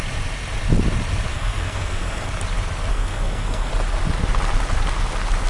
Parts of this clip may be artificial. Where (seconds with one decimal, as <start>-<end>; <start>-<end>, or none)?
1.3-2.3; 2.9-3.7

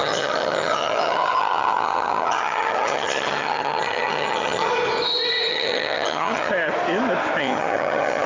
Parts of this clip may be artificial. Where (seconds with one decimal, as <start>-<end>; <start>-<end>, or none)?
0.0-4.7; 5.5-6.5; 7.4-8.3

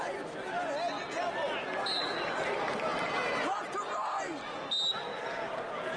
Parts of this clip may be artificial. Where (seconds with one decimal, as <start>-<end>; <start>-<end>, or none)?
none

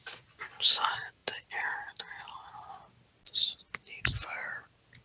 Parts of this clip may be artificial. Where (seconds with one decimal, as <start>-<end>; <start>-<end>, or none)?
none

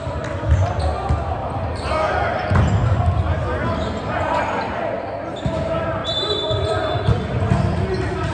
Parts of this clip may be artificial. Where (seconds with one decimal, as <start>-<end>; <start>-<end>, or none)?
1.4-2.7; 6.0-7.4

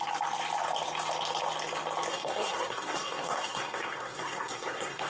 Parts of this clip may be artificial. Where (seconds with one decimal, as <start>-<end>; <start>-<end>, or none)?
2.1-5.1

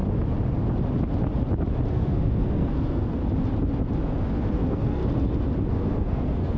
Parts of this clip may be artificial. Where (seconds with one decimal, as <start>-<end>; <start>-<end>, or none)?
1.9-3.2; 4.5-5.0; 5.7-6.6